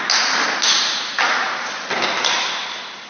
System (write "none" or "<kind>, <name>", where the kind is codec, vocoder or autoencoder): none